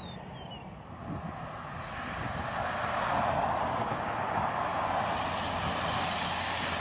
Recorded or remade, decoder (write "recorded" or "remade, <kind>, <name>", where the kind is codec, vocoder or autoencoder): recorded